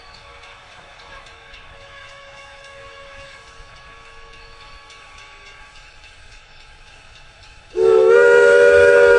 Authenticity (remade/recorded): remade